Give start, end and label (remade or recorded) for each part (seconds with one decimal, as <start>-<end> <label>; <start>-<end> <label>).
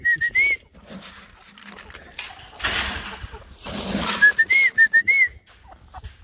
0.0-6.2 recorded